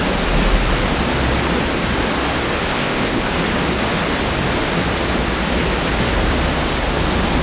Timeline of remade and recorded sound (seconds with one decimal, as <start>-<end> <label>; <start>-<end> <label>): 0.0-2.7 recorded; 2.7-3.3 remade; 3.3-7.4 recorded